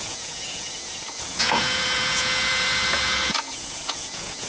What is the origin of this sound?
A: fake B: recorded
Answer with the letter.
A